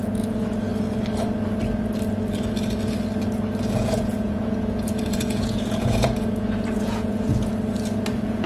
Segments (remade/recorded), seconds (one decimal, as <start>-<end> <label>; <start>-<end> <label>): 0.0-0.7 remade; 0.7-3.6 recorded; 3.6-7.5 remade; 7.5-8.1 recorded; 8.1-8.5 remade